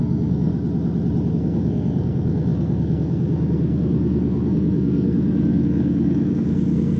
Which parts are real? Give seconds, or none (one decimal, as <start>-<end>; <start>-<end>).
0.5-1.3